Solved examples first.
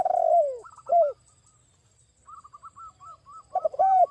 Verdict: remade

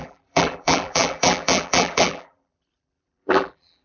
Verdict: remade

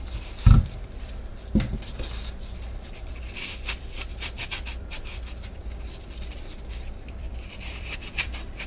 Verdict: remade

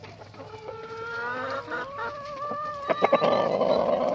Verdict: remade